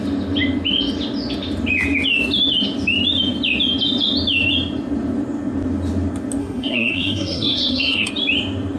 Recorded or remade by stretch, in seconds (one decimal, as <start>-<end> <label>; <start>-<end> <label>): 0.0-6.4 recorded; 6.4-8.1 remade; 8.1-8.8 recorded